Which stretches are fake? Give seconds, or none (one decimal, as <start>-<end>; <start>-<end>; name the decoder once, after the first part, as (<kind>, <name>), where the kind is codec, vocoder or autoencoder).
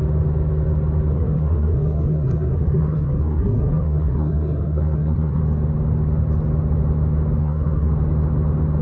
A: 1.1-5.4 (codec, SNAC); 7.4-7.9